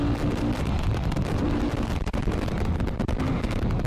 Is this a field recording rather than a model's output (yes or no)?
yes